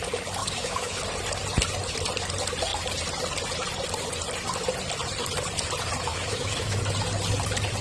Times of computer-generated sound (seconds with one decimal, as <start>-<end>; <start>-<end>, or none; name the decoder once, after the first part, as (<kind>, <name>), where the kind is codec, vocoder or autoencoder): 0.4-1.0 (autoencoder, DAC-VAE); 6.1-6.8